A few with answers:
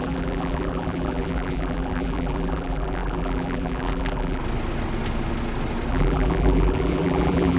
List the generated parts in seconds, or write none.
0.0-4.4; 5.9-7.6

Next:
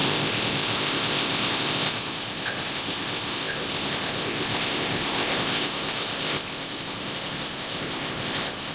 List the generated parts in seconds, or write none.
0.0-8.7

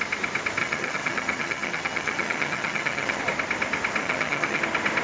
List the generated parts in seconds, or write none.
0.6-3.2; 4.0-4.6

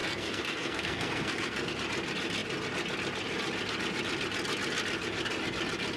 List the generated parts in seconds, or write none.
0.0-1.7

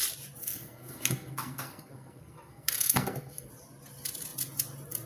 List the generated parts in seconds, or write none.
0.4-3.5

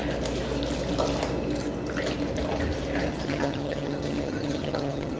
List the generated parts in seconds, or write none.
3.1-5.2